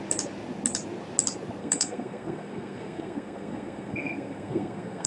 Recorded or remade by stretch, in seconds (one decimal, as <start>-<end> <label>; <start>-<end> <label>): 0.0-1.6 recorded; 1.6-5.1 remade

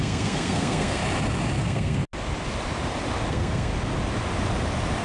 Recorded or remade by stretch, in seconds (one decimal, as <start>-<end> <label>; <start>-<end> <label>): 0.0-1.0 remade; 1.0-1.6 recorded; 1.6-2.0 remade; 2.0-3.3 recorded; 3.3-3.7 remade; 3.7-5.0 recorded

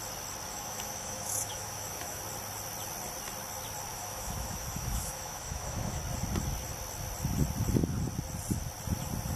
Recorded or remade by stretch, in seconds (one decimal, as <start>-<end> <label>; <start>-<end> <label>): 0.0-0.5 recorded; 0.5-2.2 remade; 2.2-3.9 recorded; 3.9-6.0 remade; 6.0-9.4 recorded

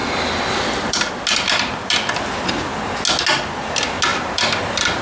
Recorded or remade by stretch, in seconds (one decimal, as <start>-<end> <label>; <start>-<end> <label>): 0.0-1.1 remade; 1.1-4.1 recorded; 4.1-5.0 remade

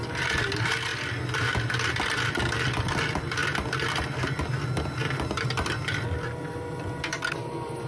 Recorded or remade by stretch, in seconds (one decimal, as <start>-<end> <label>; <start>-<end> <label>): 0.0-7.9 recorded

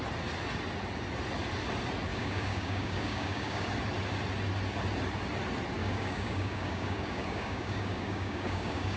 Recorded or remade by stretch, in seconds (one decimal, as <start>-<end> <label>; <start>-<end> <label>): 0.0-2.1 recorded; 2.1-3.7 remade; 3.7-5.8 recorded; 5.8-9.0 remade